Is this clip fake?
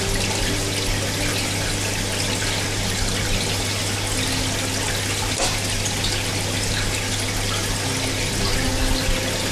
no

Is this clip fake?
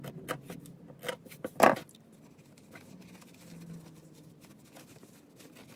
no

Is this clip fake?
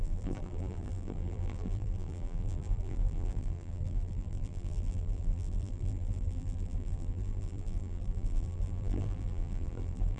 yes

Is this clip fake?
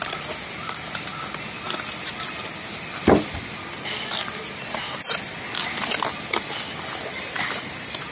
no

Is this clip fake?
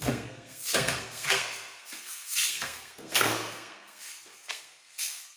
yes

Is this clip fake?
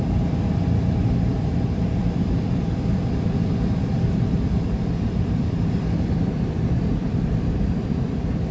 yes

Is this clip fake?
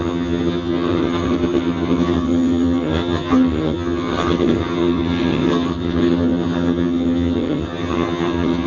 yes